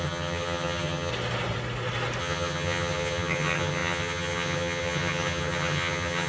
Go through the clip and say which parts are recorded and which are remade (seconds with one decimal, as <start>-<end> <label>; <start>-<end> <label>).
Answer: 0.0-1.1 remade; 1.1-2.2 recorded; 2.2-6.3 remade